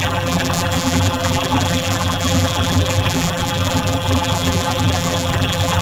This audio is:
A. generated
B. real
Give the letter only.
A